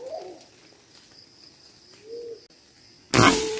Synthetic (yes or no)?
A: no